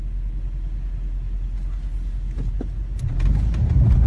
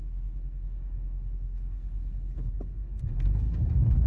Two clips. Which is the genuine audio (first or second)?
first